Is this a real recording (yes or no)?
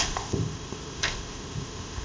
no